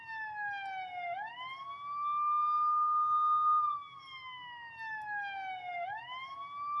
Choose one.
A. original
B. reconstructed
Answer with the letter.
A